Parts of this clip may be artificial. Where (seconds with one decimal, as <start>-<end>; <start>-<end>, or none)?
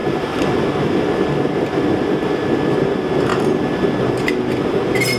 none